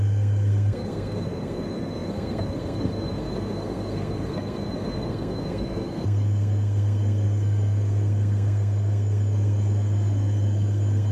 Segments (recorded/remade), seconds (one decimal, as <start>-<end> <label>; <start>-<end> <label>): 0.0-11.1 remade